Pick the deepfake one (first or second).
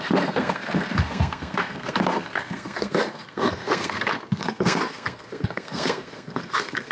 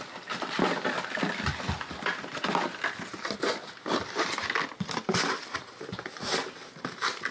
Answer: first